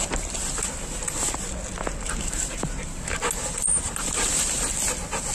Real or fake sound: real